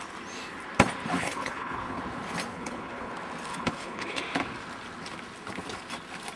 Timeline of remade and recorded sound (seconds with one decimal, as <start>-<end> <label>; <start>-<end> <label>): 0.0-1.2 recorded; 1.2-2.0 remade; 2.0-2.5 recorded; 2.5-3.1 remade; 3.1-3.5 recorded; 3.5-4.2 remade; 4.2-6.4 recorded